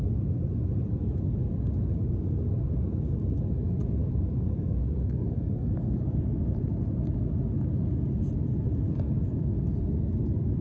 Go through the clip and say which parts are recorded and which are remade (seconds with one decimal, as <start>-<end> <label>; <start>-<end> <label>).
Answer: 0.0-4.0 recorded; 4.0-6.2 remade; 6.2-10.6 recorded